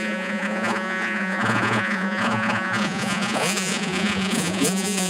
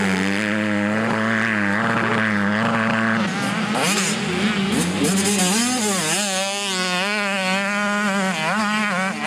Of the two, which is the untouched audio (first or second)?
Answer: second